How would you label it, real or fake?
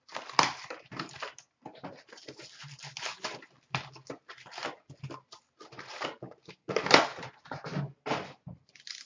real